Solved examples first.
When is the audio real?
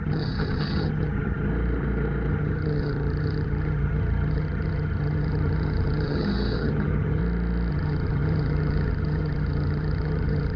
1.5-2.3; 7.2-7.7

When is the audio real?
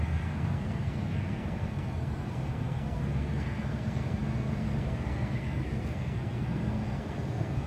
none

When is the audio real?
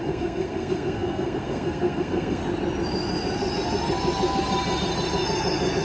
2.4-5.8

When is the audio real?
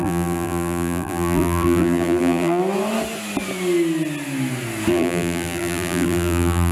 2.6-4.9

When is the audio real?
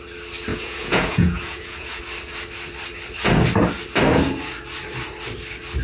0.0-0.5; 2.0-5.8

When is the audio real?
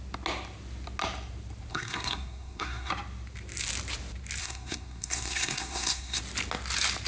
0.0-1.7; 2.9-4.4; 6.2-7.1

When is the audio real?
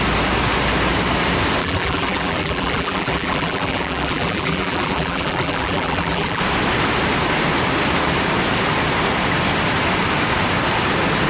0.0-1.6; 6.4-11.3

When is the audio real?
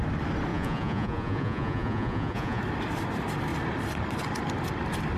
0.0-0.5; 2.6-5.2